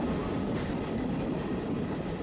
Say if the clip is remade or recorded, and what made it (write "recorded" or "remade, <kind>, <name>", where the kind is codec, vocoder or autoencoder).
recorded